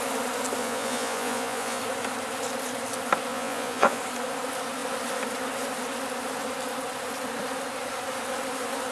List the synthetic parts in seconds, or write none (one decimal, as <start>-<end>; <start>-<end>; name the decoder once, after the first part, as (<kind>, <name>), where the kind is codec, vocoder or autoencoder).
0.6-1.8 (vocoder, Vocos); 3.3-4.0